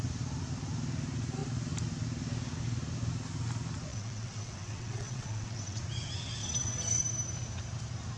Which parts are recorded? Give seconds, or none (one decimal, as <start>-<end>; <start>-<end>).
0.0-3.9; 5.8-6.4; 7.0-8.2